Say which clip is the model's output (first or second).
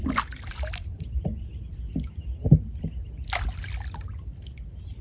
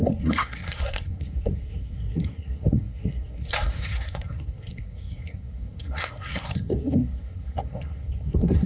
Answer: second